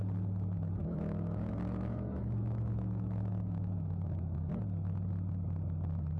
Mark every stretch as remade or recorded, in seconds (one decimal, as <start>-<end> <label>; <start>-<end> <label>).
0.0-0.8 recorded; 0.8-4.5 remade; 4.5-6.2 recorded